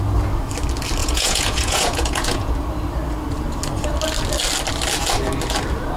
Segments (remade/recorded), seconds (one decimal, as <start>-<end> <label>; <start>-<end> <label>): 0.0-1.0 recorded; 1.0-2.5 remade; 2.5-6.0 recorded